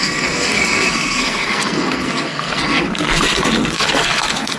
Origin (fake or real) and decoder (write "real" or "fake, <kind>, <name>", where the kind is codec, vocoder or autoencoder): fake, codec, SNAC